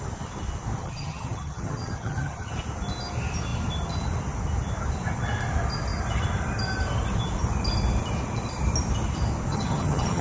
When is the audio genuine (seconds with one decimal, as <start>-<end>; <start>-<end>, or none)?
0.0-0.8; 2.5-9.5